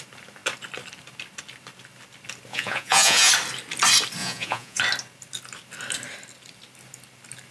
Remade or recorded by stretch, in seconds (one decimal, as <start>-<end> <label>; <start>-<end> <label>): 0.0-2.5 recorded; 2.5-3.3 remade; 3.3-4.2 recorded; 4.2-4.8 remade; 4.8-7.5 recorded